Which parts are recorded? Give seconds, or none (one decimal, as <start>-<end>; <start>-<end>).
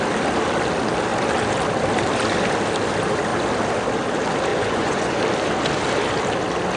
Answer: 0.0-4.5; 5.2-6.8